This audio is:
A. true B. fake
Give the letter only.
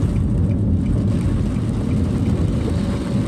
A